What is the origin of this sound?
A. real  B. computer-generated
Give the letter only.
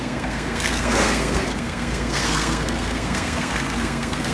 B